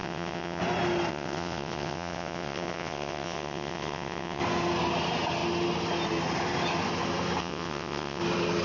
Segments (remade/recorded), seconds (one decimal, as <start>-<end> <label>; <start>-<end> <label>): 0.0-0.6 remade; 0.6-1.1 recorded; 1.1-4.4 remade; 4.4-7.4 recorded; 7.4-8.2 remade; 8.2-8.6 recorded